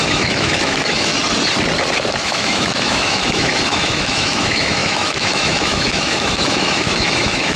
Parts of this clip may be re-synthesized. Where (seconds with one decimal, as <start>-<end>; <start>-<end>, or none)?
0.0-1.1; 2.2-7.6